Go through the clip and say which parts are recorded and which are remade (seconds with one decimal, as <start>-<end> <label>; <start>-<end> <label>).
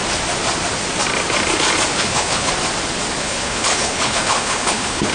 0.0-1.9 recorded; 1.9-2.5 remade; 2.5-3.2 recorded; 3.2-5.1 remade